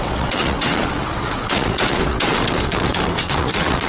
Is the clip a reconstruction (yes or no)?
yes